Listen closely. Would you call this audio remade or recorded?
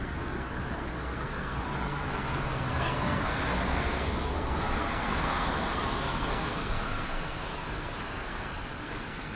remade